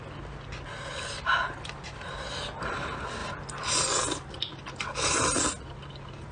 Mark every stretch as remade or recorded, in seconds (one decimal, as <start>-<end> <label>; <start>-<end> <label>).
0.0-6.3 recorded